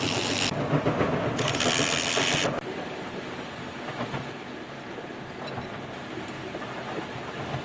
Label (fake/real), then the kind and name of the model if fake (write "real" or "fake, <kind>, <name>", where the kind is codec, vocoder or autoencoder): real